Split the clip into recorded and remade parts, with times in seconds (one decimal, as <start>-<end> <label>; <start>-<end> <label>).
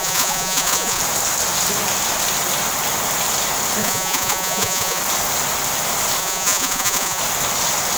0.0-1.0 remade; 1.0-3.8 recorded; 3.8-5.0 remade; 5.0-6.2 recorded; 6.2-7.2 remade; 7.2-8.0 recorded